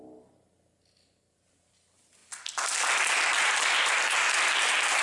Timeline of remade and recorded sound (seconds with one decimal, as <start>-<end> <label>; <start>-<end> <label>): 0.0-5.0 recorded